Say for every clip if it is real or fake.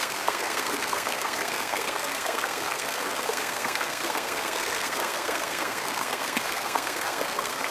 fake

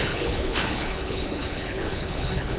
fake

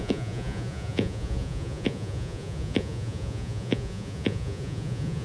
fake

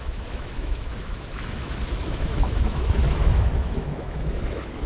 fake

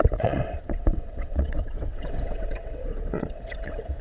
fake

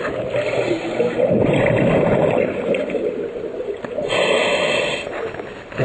real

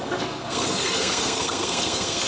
fake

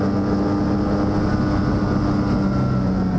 real